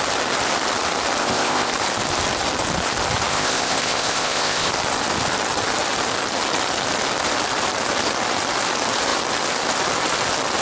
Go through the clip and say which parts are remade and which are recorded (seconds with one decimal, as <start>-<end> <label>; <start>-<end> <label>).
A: 0.0-1.2 recorded; 1.2-1.7 remade; 1.7-3.3 recorded; 3.3-4.7 remade; 4.7-10.6 recorded